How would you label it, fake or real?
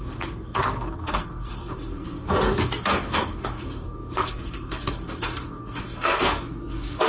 fake